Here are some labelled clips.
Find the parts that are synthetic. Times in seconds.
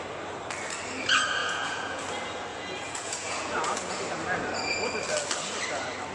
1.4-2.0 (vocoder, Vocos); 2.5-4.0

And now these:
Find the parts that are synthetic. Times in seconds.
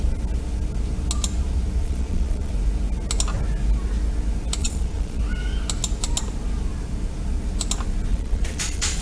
1.8-2.5 (vocoder, Vocos); 4.6-5.2; 8.1-9.0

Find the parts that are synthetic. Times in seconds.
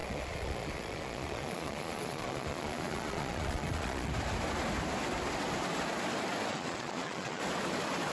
0.0-4.1 (vocoder, Vocos); 6.5-7.4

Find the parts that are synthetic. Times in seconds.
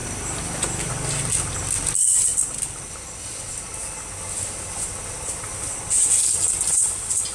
none